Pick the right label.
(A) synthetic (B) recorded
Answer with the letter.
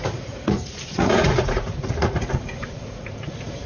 A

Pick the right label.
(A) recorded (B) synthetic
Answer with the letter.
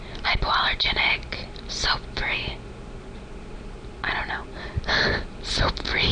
A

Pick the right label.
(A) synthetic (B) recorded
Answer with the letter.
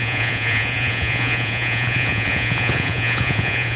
A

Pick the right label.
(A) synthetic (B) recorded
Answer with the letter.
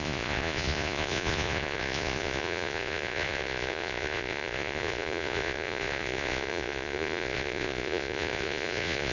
A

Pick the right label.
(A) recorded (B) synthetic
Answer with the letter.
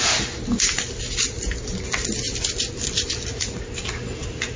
A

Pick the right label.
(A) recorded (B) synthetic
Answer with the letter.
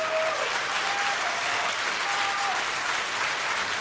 A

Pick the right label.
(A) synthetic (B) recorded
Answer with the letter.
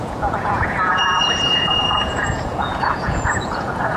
A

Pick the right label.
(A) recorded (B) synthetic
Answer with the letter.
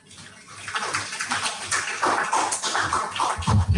A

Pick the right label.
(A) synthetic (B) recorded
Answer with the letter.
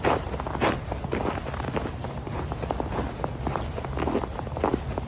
B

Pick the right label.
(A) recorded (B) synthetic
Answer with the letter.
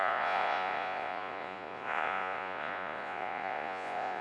B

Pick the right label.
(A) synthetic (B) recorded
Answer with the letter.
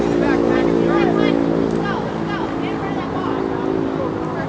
B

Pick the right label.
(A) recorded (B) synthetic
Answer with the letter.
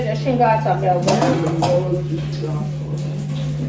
A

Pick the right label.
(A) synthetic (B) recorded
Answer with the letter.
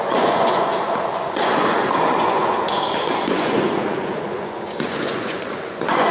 A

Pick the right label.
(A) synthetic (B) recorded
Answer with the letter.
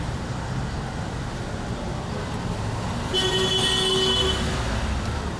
B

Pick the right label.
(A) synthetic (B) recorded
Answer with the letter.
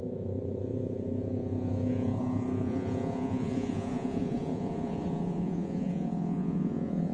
A